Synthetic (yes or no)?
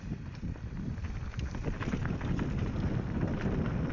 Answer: no